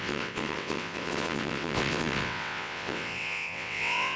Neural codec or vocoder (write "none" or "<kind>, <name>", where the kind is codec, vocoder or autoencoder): vocoder, WaveNeXt